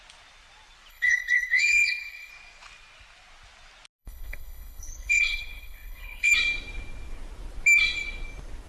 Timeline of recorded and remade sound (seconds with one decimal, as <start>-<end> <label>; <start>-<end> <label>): 0.0-0.9 recorded; 0.9-2.3 remade; 2.3-4.0 recorded; 4.0-6.3 remade; 6.3-8.7 recorded